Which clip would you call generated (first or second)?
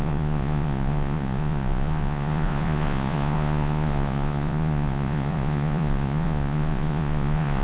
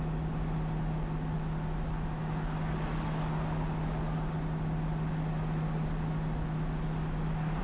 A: first